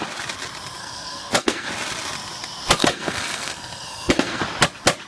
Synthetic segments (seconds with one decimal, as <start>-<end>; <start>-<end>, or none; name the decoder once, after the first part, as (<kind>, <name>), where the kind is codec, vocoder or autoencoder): 0.8-1.7 (codec, SNAC); 2.8-4.4